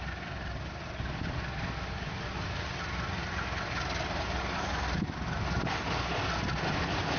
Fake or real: real